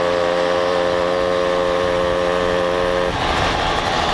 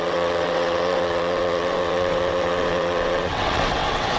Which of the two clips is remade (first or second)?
second